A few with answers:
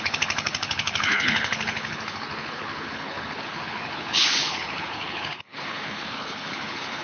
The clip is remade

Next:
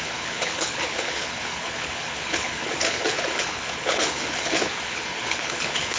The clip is remade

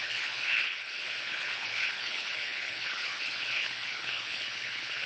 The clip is remade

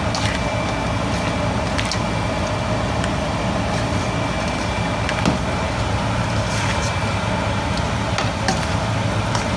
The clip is recorded